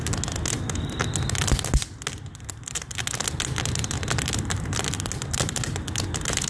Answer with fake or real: real